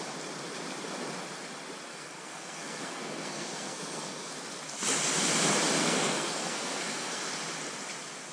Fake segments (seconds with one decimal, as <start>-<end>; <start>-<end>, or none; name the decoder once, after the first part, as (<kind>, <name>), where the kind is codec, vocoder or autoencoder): 1.9-4.3 (codec, SNAC); 5.8-7.2